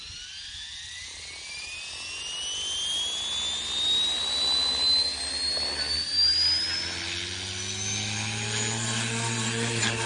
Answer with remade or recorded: recorded